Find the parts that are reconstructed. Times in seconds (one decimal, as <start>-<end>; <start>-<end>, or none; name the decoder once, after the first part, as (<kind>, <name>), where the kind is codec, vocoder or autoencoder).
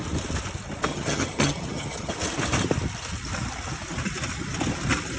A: 0.9-2.1 (vocoder, HiFi-GAN)